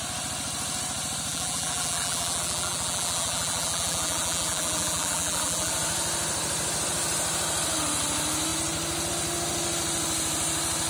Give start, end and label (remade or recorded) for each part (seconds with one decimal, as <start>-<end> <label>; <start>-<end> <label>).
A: 0.0-1.3 recorded; 1.3-5.7 remade; 5.7-10.9 recorded